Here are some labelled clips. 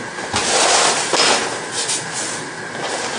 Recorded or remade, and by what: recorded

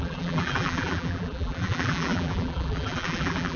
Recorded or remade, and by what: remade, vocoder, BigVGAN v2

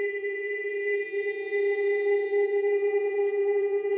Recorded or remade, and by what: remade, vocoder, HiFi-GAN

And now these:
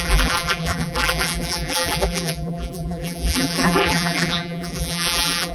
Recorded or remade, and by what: remade, vocoder, BigVGAN v2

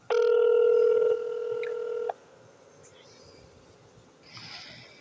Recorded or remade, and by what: recorded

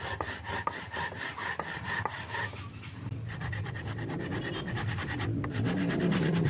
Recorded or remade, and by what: recorded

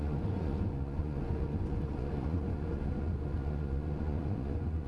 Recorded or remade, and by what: remade, vocoder, Vocos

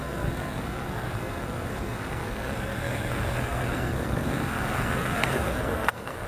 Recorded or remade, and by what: remade, codec, SNAC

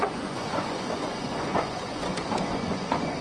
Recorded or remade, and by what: remade, vocoder, Vocos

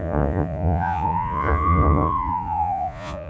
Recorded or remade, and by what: remade, vocoder, Vocos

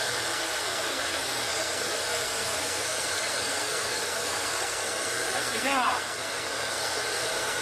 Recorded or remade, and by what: remade, codec, SNAC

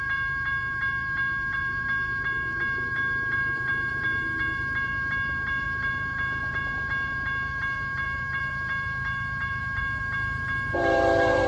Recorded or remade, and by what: remade, vocoder, BigVGAN v2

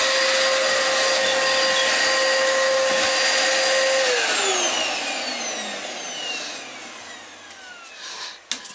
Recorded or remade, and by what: recorded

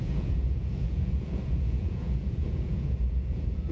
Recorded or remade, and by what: remade, vocoder, Vocos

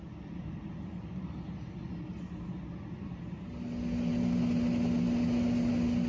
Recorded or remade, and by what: recorded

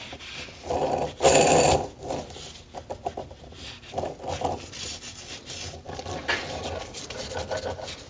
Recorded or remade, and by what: recorded